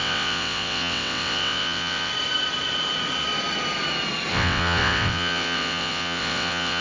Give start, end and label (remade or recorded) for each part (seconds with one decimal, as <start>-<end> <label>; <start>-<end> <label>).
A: 0.0-2.1 remade; 2.1-4.3 recorded; 4.3-6.8 remade